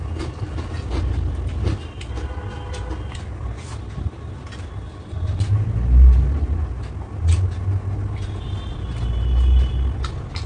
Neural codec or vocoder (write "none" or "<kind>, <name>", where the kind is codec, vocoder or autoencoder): none